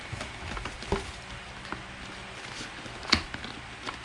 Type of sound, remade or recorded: recorded